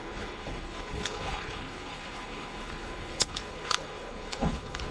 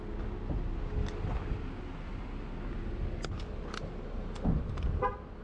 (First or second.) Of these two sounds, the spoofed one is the first